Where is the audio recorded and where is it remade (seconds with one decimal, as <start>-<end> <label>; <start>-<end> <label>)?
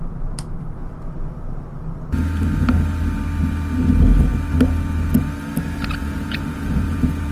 0.0-6.0 recorded; 6.0-7.3 remade